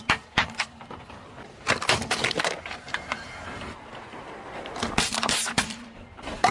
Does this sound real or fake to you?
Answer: fake